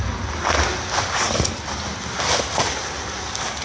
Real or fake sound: real